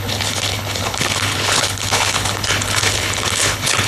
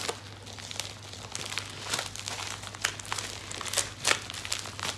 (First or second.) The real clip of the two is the second